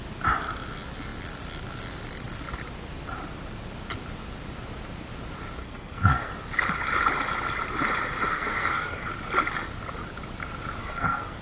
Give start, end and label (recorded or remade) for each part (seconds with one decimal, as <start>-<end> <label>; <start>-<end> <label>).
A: 0.0-5.6 recorded; 5.6-6.3 remade; 6.3-8.3 recorded; 8.3-9.1 remade; 9.1-10.8 recorded; 10.8-11.4 remade

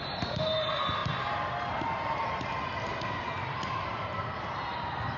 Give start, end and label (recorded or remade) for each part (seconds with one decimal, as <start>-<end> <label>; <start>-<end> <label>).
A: 0.0-5.2 recorded

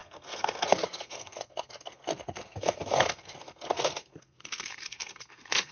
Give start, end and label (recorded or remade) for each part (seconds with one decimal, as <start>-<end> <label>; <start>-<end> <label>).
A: 0.0-5.7 remade